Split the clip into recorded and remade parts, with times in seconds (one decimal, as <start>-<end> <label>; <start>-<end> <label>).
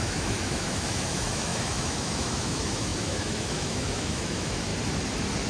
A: 0.0-4.7 remade; 4.7-5.5 recorded